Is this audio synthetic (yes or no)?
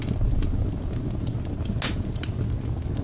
no